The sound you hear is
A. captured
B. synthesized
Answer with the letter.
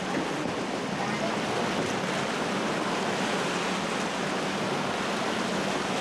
A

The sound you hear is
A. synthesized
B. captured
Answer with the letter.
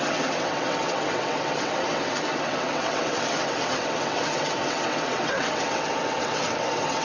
A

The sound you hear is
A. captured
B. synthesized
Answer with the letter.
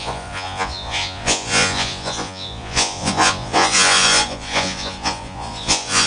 B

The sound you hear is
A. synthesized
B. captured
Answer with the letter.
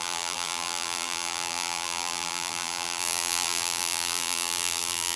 A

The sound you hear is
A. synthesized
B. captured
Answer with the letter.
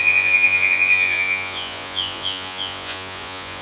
A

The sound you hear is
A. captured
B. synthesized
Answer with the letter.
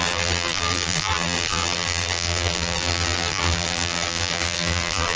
B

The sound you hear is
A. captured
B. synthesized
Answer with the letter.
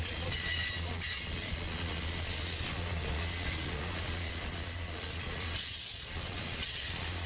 B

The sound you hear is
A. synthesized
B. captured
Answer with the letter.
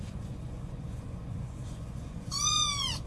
A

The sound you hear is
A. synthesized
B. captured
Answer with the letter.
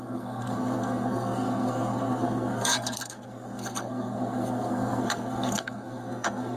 A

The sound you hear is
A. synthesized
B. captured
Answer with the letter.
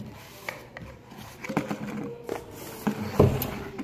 B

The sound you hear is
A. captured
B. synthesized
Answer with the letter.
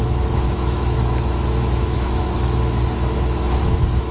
B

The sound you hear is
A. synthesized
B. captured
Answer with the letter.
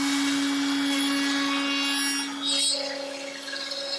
B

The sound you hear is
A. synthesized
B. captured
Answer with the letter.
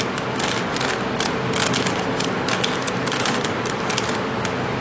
B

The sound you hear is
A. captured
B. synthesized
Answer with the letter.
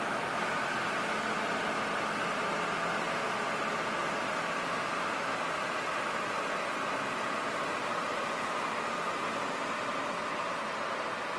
A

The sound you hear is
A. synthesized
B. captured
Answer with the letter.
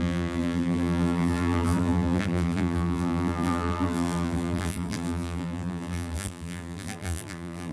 A